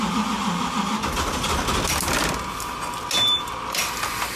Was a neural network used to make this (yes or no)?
no